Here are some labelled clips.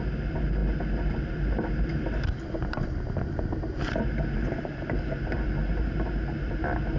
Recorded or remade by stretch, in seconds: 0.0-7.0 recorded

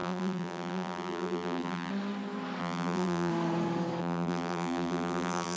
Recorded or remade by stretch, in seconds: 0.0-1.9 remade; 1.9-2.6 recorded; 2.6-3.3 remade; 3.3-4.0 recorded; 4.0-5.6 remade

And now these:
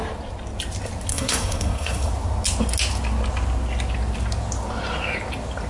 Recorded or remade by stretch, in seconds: 0.0-1.1 recorded; 1.1-2.1 remade; 2.1-5.7 recorded